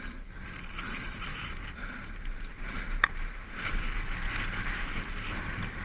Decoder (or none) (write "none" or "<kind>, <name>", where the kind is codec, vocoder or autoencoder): none